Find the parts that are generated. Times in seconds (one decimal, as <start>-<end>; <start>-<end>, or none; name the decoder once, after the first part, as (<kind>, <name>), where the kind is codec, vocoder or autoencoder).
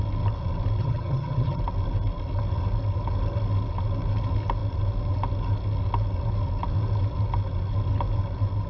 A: 0.8-1.6 (vocoder, HiFi-GAN)